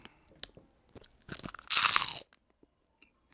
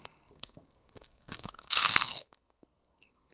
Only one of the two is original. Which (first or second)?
first